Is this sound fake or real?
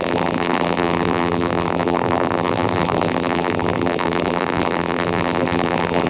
fake